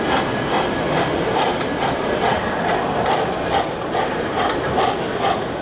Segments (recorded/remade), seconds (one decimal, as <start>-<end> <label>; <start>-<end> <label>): 0.0-5.6 recorded